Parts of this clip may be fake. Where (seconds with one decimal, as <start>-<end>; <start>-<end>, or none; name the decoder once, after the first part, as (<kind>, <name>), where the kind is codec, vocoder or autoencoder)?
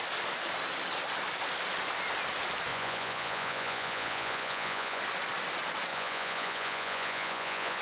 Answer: 2.7-5.0 (vocoder, Vocos); 5.9-7.8